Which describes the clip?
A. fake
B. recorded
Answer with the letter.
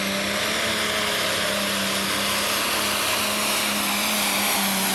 B